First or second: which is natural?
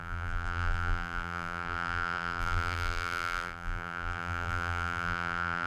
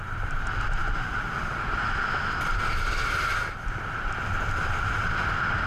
second